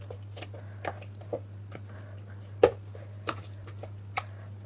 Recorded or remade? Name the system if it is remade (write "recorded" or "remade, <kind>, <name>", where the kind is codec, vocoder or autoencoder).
recorded